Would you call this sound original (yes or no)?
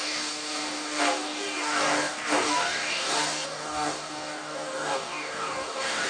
no